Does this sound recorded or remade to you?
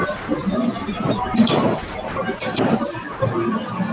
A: recorded